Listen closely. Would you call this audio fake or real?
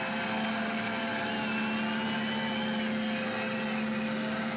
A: real